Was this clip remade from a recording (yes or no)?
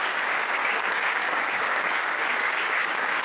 yes